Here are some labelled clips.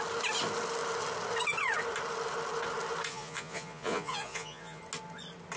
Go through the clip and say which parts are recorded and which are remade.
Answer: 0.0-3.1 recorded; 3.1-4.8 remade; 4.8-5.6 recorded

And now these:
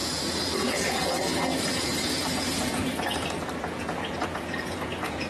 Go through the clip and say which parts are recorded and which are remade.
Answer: 0.0-2.9 remade; 2.9-3.6 recorded; 3.6-5.3 remade

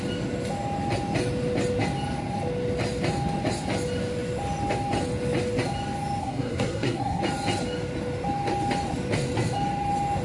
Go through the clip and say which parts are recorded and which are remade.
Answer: 0.0-6.2 recorded; 6.2-7.2 remade; 7.2-10.2 recorded

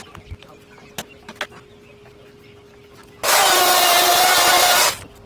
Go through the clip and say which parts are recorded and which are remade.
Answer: 0.0-5.3 recorded